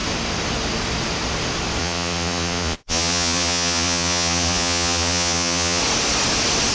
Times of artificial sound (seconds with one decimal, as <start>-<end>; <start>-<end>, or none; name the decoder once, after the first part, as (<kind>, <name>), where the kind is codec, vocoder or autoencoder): 1.8-5.8 (vocoder, Vocos)